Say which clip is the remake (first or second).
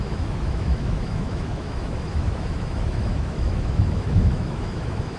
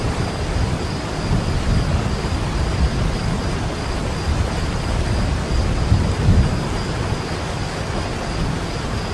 first